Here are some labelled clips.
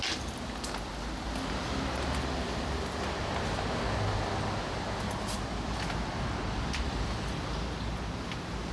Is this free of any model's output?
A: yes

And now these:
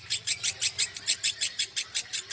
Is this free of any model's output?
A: yes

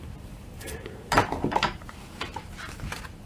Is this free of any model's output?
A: no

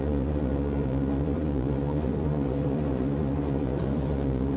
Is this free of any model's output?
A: no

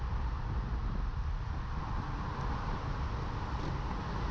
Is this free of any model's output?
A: yes